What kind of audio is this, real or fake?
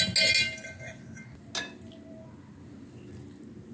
real